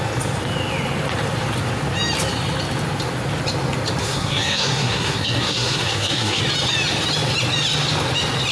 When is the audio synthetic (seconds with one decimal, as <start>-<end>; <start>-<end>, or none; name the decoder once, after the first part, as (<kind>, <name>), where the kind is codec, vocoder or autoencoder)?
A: 4.0-6.4 (codec, SNAC)